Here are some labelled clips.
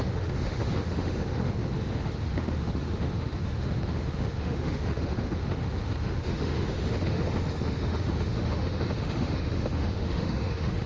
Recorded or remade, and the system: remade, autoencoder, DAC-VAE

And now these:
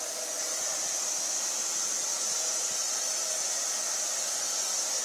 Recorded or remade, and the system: recorded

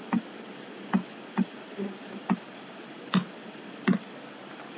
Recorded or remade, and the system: recorded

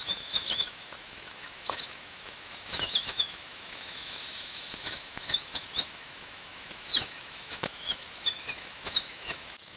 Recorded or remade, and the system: remade, autoencoder, DAC-VAE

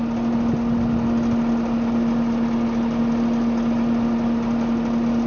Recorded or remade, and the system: recorded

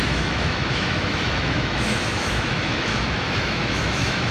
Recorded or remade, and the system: remade, autoencoder, DAC-VAE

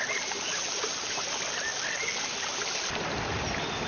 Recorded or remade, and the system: recorded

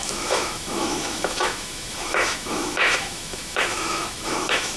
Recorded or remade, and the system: remade, autoencoder, DAC-VAE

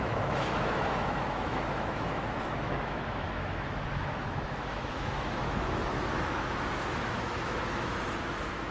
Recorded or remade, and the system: remade, autoencoder, DAC-VAE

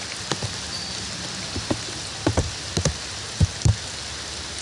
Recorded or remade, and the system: recorded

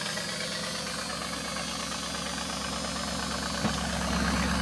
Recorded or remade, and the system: recorded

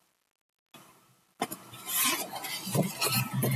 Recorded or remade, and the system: recorded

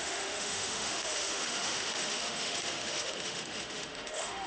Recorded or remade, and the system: remade, autoencoder, DAC-VAE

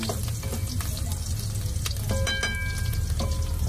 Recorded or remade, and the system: recorded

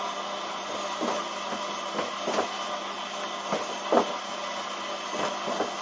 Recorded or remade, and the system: recorded